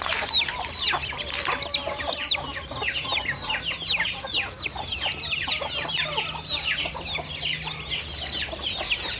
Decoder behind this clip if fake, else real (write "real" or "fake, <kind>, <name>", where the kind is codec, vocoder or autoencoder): real